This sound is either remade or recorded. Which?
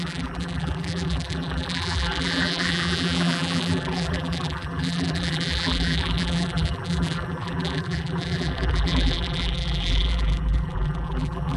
remade